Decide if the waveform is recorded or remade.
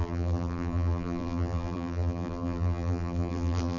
remade